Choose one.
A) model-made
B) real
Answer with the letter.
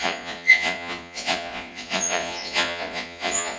A